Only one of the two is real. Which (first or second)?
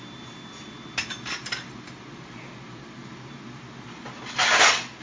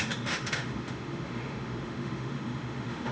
first